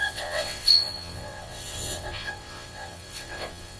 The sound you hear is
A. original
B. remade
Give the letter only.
B